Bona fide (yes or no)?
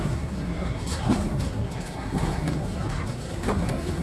no